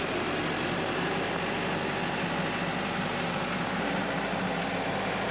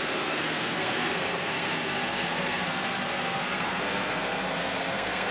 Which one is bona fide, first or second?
first